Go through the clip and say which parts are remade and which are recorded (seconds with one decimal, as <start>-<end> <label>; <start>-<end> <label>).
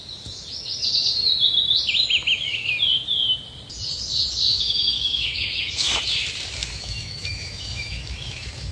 0.0-4.5 recorded; 4.5-6.0 remade; 6.0-6.6 recorded; 6.6-8.7 remade